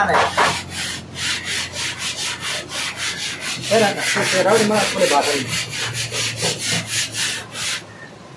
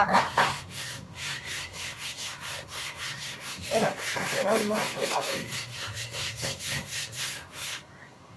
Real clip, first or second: first